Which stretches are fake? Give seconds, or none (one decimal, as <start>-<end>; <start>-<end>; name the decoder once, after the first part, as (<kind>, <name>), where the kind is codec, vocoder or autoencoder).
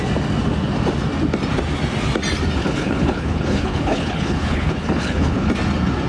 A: 2.6-5.5 (codec, HILCodec)